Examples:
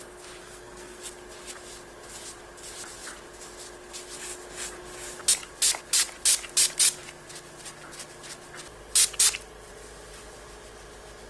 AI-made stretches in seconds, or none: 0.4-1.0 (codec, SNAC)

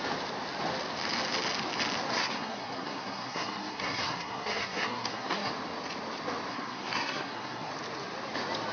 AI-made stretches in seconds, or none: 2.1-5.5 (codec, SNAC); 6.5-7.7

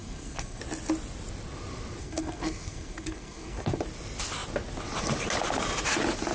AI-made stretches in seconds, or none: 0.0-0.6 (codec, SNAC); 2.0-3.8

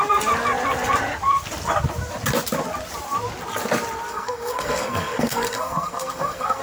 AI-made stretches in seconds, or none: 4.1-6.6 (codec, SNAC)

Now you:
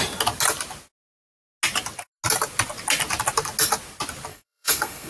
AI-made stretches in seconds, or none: 4.3-5.1 (codec, SNAC)

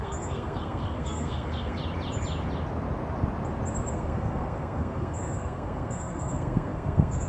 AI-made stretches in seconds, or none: 0.0-1.8 (codec, SNAC); 3.9-7.3

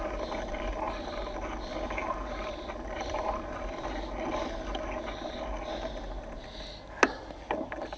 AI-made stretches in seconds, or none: none

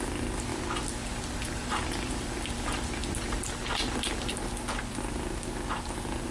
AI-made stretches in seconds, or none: none